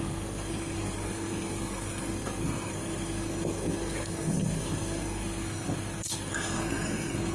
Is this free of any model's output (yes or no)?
no